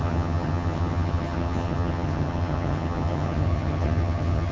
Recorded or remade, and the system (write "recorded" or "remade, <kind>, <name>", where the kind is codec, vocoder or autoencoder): remade, vocoder, HiFi-GAN